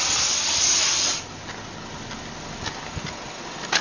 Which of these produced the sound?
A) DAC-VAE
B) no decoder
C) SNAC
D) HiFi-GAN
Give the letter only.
B